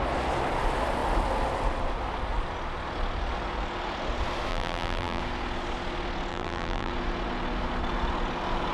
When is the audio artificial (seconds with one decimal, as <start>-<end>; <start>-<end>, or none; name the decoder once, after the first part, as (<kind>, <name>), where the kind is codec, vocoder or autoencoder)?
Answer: 4.5-5.2 (vocoder, BigVGAN v2); 6.3-6.9